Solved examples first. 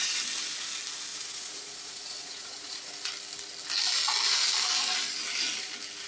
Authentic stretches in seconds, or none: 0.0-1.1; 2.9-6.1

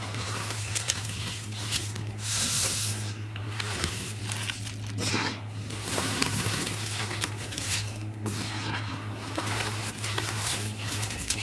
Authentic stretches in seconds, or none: 4.2-5.1

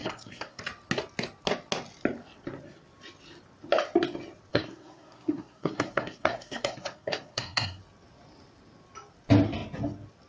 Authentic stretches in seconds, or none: 0.6-4.5; 7.8-10.3

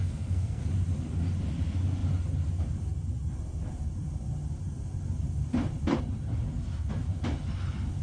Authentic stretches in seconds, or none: 0.7-8.0

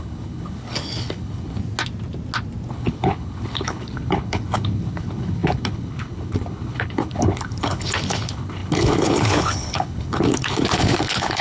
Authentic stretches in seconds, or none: 1.6-2.7

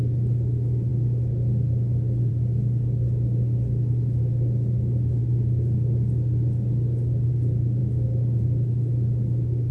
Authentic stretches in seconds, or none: 0.0-9.7

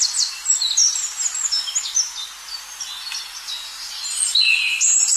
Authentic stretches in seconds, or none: 0.0-5.2